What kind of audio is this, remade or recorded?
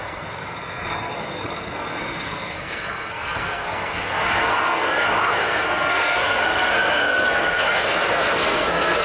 remade